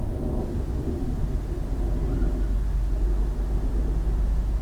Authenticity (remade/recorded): recorded